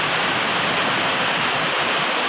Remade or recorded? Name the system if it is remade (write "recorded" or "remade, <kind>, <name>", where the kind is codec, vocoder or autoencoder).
recorded